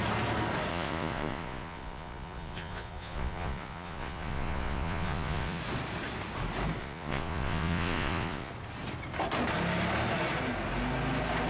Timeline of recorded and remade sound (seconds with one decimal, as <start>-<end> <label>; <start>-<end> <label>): 0.0-0.7 recorded; 0.7-5.6 remade; 5.6-6.8 recorded; 6.8-8.5 remade; 8.5-11.5 recorded